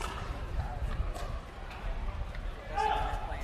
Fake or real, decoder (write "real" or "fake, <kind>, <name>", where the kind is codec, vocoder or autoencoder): real